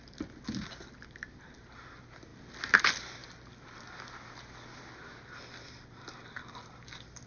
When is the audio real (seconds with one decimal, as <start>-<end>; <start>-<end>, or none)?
0.0-7.3